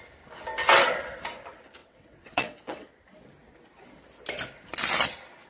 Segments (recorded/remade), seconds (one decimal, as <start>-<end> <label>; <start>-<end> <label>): 0.0-1.8 recorded; 1.8-2.9 remade; 2.9-5.5 recorded